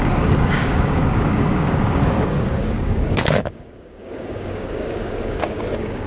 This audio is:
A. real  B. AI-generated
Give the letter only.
B